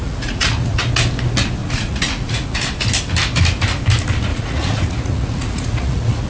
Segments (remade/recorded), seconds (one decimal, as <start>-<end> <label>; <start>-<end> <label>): 0.0-0.8 remade; 0.8-1.6 recorded; 1.6-2.6 remade; 2.6-4.3 recorded; 4.3-6.3 remade